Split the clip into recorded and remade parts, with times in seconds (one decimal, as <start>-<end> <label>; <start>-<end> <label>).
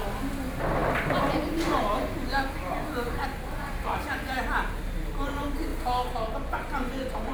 0.0-0.8 recorded; 0.8-4.1 remade; 4.1-7.3 recorded